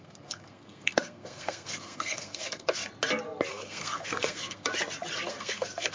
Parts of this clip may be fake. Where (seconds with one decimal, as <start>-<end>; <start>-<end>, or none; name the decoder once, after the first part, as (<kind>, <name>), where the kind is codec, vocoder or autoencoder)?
0.0-2.8 (codec, SNAC); 3.5-4.7; 5.3-5.9